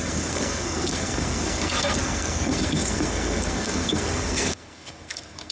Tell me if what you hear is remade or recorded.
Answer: remade